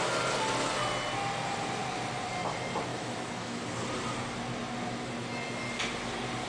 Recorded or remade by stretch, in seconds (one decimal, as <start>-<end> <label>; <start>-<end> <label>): 0.0-2.9 recorded; 2.9-3.6 remade; 3.6-6.5 recorded